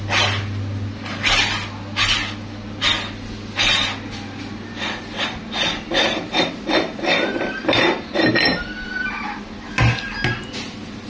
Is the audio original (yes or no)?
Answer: yes